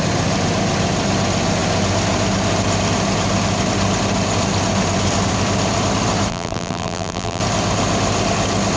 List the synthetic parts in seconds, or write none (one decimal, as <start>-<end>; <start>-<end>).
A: 6.3-7.4